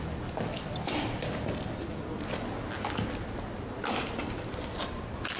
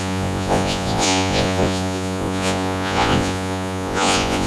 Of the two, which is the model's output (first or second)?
second